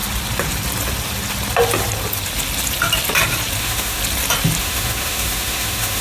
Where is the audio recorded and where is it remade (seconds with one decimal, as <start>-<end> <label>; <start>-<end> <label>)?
0.0-3.6 recorded; 3.6-4.0 remade; 4.0-4.6 recorded; 4.6-6.0 remade